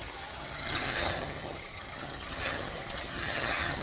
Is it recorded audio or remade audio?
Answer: remade